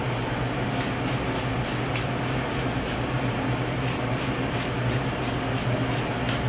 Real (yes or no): yes